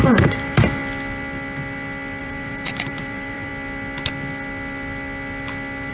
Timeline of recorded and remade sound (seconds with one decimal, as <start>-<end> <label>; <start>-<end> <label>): 0.0-0.8 remade; 0.8-2.2 recorded; 2.2-3.5 remade; 3.5-5.9 recorded